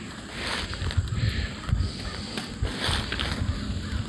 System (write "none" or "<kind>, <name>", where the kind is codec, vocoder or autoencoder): none